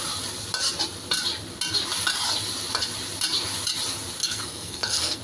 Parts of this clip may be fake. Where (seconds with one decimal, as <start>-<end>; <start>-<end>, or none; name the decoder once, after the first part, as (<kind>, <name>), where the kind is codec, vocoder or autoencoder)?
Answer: 4.2-5.2 (codec, SNAC)